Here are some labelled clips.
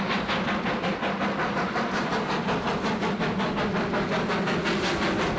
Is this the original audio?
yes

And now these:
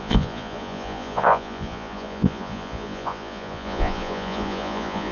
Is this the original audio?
no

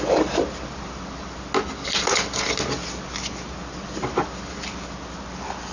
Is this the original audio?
yes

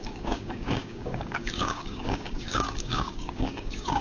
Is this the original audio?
no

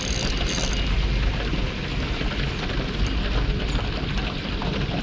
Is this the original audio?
yes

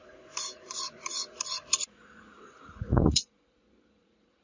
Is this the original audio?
no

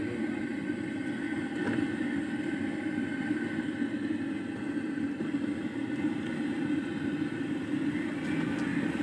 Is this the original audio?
yes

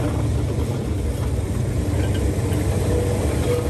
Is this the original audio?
yes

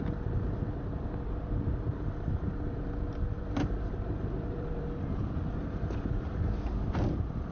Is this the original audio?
no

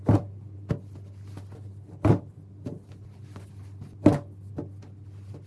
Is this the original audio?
yes